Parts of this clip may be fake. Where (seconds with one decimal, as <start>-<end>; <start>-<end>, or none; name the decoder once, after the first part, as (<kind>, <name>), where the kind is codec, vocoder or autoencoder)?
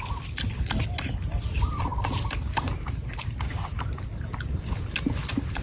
none